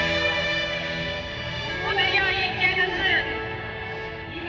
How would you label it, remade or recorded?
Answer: remade